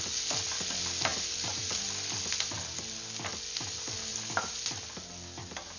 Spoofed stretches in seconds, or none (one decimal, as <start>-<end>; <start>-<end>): none